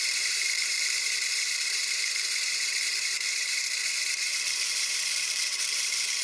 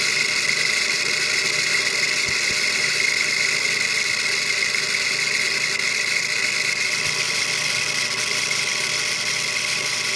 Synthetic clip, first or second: first